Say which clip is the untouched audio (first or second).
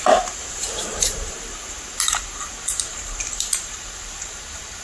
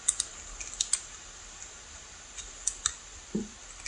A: second